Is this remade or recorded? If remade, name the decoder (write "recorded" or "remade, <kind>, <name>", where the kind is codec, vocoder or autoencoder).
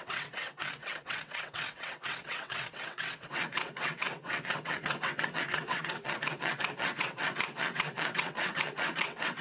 remade, vocoder, WaveNeXt